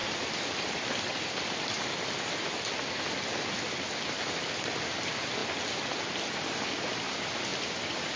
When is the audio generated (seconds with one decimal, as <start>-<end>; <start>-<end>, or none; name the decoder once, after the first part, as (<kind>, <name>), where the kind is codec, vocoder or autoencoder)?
none